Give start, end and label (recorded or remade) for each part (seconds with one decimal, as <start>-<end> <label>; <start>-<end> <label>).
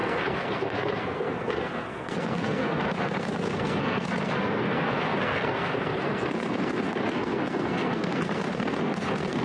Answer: 0.0-9.4 remade